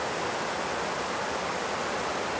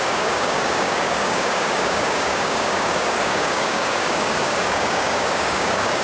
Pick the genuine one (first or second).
first